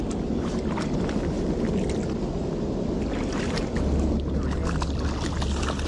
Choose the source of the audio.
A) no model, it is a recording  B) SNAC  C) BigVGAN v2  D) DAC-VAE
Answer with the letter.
A